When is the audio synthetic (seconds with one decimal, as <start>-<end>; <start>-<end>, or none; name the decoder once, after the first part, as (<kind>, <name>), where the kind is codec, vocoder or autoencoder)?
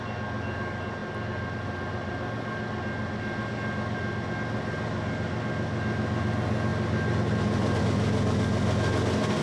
none